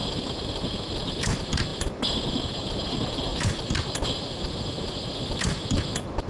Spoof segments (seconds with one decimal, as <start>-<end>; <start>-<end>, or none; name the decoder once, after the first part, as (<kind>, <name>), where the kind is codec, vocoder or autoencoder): 0.0-0.8 (vocoder, BigVGAN v2); 3.3-4.2